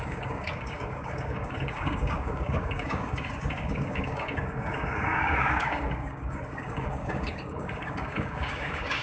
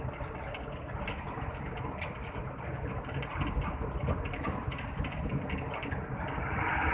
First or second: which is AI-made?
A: first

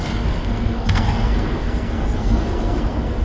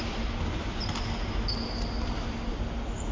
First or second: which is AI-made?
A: first